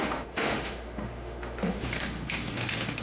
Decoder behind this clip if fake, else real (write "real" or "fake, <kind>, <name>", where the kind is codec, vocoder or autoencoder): fake, autoencoder, DAC-VAE